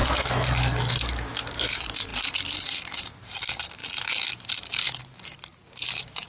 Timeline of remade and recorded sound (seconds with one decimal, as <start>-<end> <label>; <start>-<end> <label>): 0.0-1.5 recorded; 1.5-6.3 remade